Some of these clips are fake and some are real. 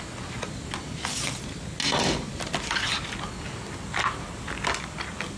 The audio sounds real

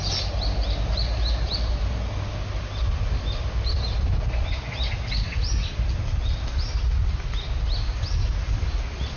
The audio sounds real